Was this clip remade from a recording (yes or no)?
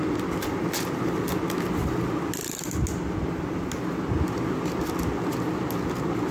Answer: no